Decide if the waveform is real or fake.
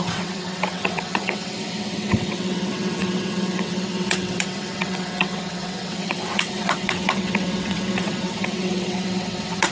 fake